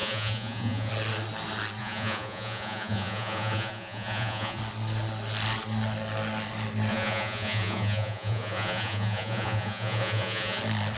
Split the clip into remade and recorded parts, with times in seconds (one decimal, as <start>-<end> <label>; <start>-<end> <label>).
0.0-0.9 remade; 0.9-1.8 recorded; 1.8-4.6 remade; 4.6-6.9 recorded; 6.9-10.6 remade; 10.6-11.0 recorded